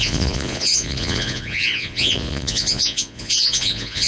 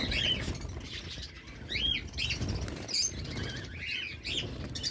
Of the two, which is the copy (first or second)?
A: first